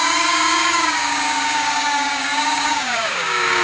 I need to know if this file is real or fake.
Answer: fake